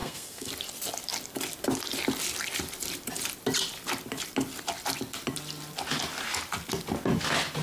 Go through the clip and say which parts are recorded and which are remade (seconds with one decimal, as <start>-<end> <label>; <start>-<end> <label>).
0.0-0.5 remade; 0.5-7.6 recorded